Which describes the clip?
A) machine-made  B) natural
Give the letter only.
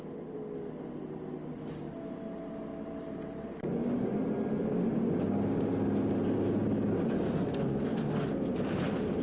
B